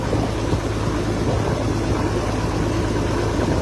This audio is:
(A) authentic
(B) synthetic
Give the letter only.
A